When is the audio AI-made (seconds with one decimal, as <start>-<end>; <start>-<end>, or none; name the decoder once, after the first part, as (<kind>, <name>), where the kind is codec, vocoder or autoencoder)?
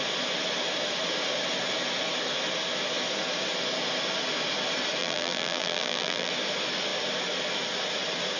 5.0-6.3 (vocoder, BigVGAN v2)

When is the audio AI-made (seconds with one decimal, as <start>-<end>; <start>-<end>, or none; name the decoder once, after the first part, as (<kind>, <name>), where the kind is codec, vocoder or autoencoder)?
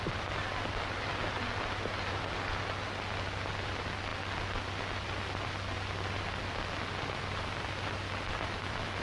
none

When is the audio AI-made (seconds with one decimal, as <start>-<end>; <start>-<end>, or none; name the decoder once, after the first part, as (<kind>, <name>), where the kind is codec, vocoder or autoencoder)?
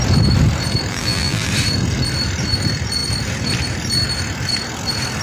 0.9-1.5 (vocoder, BigVGAN v2)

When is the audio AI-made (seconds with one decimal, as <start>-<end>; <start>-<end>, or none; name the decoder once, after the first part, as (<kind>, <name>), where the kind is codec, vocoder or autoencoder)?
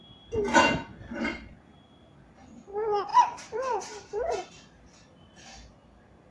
3.1-4.5 (vocoder, BigVGAN v2)